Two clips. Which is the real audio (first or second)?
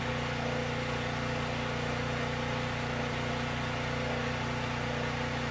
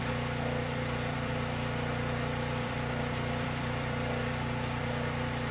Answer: first